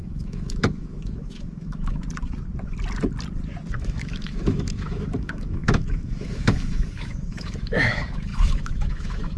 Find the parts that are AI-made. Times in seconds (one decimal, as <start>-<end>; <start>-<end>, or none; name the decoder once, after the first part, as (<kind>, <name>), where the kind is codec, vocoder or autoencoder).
0.0-2.0 (autoencoder, DAC-VAE); 3.7-9.4